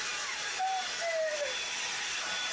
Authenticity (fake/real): real